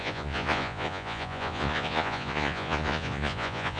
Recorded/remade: remade